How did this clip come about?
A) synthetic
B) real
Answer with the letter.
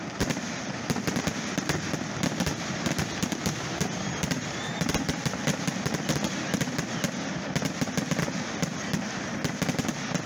B